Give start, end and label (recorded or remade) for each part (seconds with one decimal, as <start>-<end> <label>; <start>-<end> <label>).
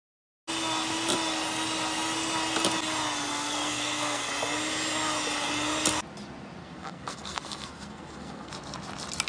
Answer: 0.0-3.3 recorded; 3.3-4.3 remade; 4.3-6.6 recorded; 6.6-8.5 remade; 8.5-9.3 recorded